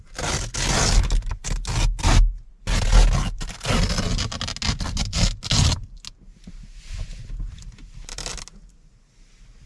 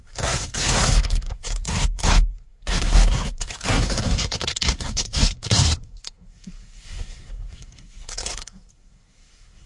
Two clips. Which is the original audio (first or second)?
first